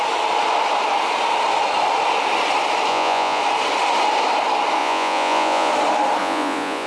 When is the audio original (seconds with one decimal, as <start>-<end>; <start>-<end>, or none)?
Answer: 0.0-2.9; 3.4-4.8; 5.7-6.2